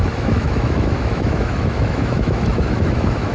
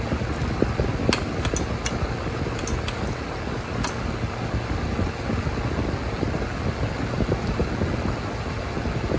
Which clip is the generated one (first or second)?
first